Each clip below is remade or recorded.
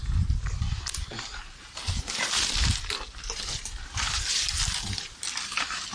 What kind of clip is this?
recorded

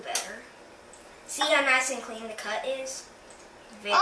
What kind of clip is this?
recorded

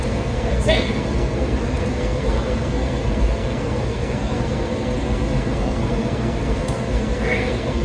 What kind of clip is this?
remade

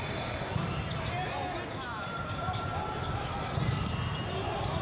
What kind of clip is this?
recorded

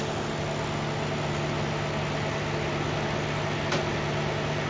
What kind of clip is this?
recorded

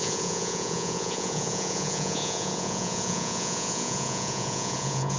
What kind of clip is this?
remade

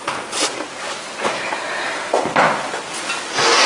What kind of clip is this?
recorded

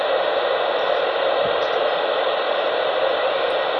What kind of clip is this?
recorded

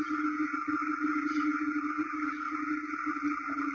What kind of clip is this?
recorded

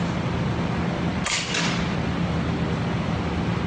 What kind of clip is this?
recorded